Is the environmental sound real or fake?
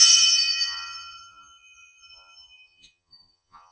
fake